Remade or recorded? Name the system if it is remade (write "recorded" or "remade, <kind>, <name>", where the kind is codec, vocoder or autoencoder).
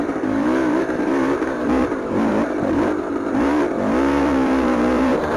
remade, vocoder, BigVGAN v2